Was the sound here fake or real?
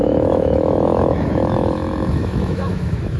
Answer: fake